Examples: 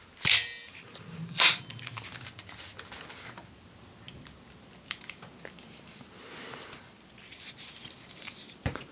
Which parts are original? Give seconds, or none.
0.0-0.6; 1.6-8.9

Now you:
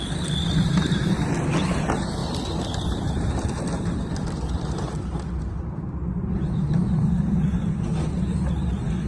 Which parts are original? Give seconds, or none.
0.0-9.1